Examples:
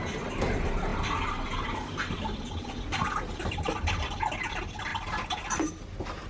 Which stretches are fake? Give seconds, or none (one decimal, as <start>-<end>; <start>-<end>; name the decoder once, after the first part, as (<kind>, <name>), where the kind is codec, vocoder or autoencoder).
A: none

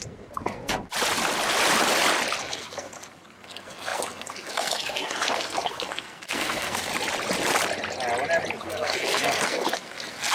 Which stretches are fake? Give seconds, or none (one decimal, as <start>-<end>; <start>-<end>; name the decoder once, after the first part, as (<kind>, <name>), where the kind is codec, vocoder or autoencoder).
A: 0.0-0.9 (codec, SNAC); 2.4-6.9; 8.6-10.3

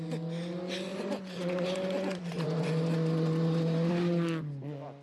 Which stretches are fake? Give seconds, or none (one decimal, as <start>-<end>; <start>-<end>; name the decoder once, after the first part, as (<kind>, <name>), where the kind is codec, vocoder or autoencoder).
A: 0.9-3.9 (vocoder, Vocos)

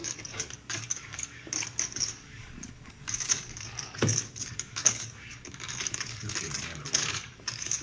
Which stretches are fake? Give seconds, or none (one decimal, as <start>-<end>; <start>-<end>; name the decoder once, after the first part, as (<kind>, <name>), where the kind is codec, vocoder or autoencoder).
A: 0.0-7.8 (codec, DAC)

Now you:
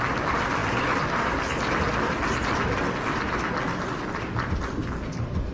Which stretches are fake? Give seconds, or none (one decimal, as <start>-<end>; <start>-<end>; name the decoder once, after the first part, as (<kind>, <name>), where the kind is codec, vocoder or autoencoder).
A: none

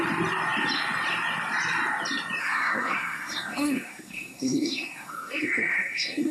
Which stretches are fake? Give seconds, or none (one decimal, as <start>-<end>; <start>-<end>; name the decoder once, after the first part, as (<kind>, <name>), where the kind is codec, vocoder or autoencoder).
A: 2.4-6.3 (codec, SNAC)

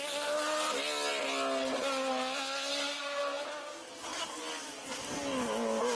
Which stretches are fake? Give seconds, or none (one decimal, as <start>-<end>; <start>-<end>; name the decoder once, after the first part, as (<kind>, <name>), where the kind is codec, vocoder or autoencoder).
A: none

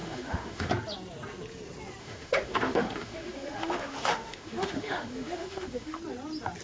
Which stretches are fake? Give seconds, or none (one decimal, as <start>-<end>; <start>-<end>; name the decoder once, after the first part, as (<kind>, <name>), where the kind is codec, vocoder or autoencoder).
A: 0.0-0.7 (autoencoder, DAC-VAE); 2.0-6.0